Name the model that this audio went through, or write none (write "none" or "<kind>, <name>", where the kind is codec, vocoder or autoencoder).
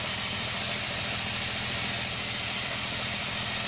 vocoder, BigVGAN v2